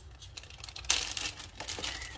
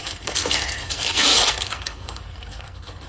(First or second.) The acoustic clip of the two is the first